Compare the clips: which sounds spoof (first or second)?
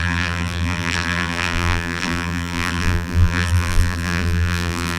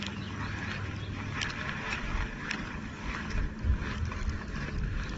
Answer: first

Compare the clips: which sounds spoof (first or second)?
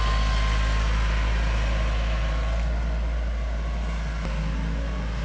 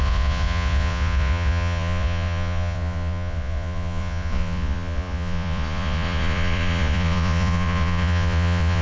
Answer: second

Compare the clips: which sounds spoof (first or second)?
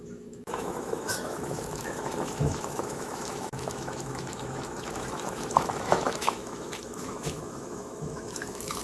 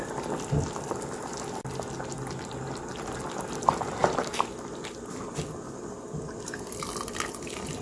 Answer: first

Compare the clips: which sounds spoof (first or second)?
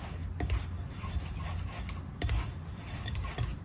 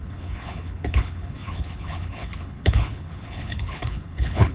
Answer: second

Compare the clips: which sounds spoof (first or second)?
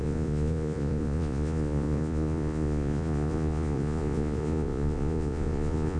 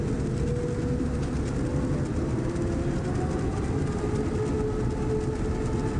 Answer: first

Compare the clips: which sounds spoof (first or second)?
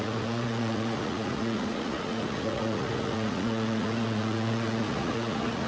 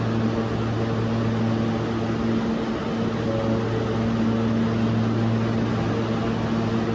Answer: first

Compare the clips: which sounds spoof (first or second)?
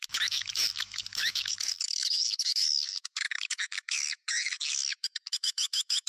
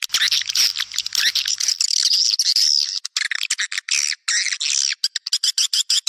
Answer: first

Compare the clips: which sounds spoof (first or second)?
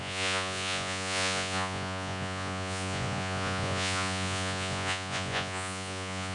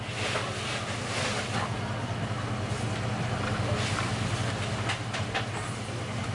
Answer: first